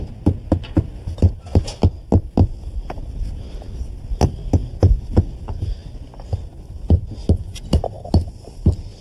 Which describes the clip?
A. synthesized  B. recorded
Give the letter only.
B